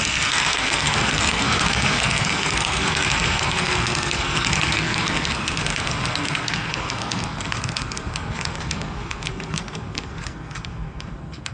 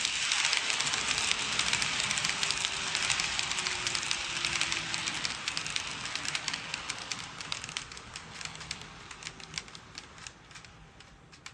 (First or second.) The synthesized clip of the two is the first